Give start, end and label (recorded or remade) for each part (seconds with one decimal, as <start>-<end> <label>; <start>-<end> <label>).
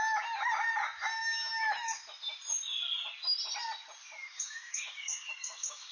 0.0-4.2 recorded; 4.2-5.9 remade